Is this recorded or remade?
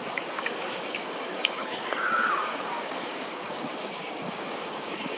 remade